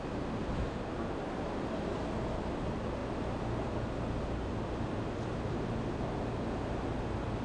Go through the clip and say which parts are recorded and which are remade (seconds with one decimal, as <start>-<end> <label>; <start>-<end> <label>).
0.0-7.4 recorded